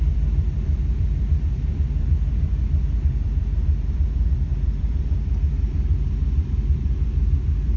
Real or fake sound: fake